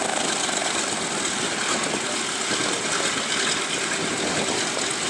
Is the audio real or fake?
real